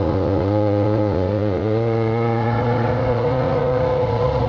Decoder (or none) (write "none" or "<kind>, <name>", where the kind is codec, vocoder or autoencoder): vocoder, Vocos